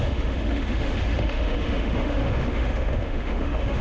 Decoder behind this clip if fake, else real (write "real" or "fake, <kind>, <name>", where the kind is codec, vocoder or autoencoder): fake, autoencoder, DAC-VAE